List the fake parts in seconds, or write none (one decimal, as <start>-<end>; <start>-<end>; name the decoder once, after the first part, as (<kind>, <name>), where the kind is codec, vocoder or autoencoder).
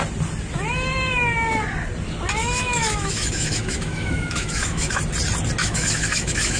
2.4-5.0 (autoencoder, DAC-VAE); 5.6-6.6